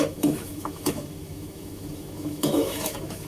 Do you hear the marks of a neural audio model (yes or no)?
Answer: yes